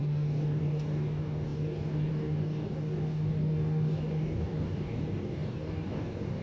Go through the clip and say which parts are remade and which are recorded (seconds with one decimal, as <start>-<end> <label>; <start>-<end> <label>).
0.0-6.4 remade